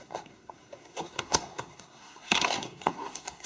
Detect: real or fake fake